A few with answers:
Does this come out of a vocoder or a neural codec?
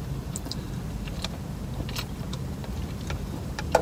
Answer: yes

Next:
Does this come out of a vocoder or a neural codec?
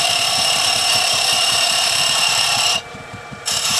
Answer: yes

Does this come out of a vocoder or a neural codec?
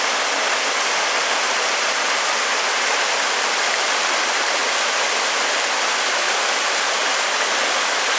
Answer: no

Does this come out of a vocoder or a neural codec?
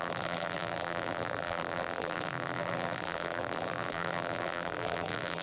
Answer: yes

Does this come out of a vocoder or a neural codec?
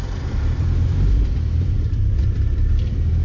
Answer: yes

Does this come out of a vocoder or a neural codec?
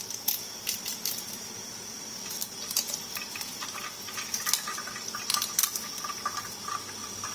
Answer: no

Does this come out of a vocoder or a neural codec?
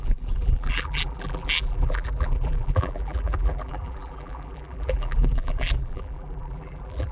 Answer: yes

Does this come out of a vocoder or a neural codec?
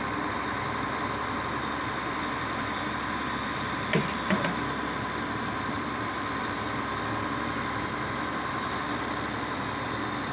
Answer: yes